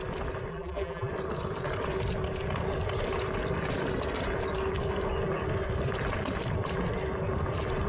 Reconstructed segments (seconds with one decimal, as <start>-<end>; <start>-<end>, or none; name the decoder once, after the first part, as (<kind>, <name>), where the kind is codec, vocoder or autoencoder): 0.5-1.1 (vocoder, BigVGAN v2)